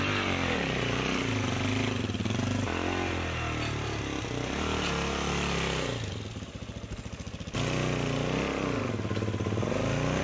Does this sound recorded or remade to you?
recorded